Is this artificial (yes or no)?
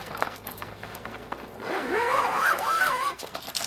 yes